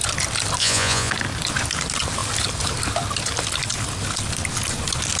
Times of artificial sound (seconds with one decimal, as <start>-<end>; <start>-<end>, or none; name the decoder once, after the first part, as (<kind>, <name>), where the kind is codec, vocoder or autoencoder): 0.6-1.1 (vocoder, Vocos)